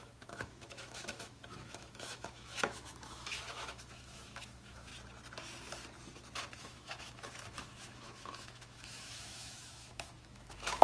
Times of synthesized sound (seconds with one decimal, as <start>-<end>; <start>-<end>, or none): 0.0-4.9; 6.6-10.8